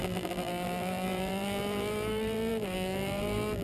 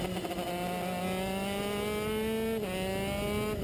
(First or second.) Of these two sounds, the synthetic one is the first